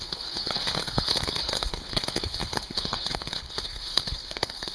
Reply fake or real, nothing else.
fake